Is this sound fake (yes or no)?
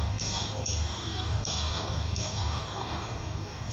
yes